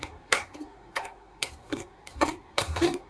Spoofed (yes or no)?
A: yes